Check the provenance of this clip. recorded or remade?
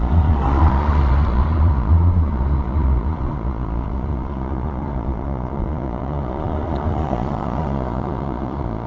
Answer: remade